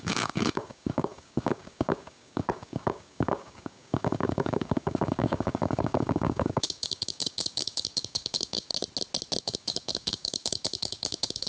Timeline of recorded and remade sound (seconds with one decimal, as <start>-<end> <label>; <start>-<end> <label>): 0.0-8.7 remade; 8.7-9.4 recorded; 9.4-11.5 remade

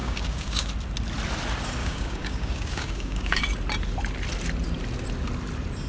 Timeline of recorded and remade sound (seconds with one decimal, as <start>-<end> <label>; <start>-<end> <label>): 0.0-0.7 remade; 0.7-1.8 recorded; 1.8-3.4 remade; 3.4-5.9 recorded

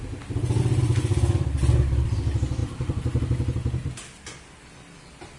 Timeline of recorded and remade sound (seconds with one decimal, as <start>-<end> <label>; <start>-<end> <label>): 0.0-5.4 recorded

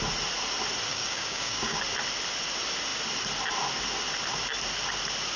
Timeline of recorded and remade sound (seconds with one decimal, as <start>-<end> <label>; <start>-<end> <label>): 0.0-0.9 recorded; 0.9-1.8 remade; 1.8-5.4 recorded

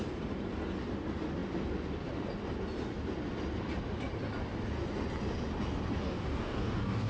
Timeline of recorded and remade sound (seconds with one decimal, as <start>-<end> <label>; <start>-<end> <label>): 0.0-6.0 recorded; 6.0-7.1 remade